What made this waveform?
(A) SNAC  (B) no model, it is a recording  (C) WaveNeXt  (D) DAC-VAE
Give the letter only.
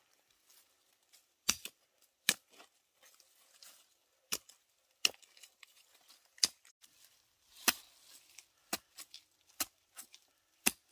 B